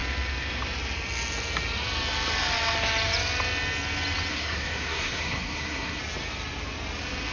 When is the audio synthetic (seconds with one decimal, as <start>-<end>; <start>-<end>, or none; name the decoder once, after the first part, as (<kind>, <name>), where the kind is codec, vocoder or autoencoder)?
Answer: 4.3-6.0 (codec, SNAC)